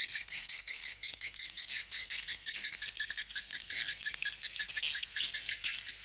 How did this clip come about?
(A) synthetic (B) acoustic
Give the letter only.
A